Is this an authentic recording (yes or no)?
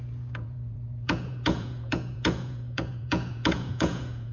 no